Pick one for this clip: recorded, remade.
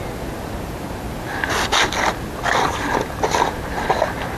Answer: recorded